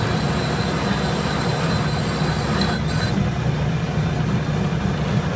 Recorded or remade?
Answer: recorded